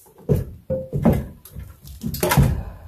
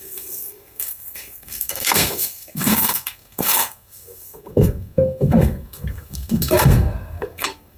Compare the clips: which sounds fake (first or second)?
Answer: second